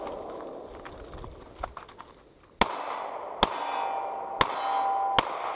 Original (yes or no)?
yes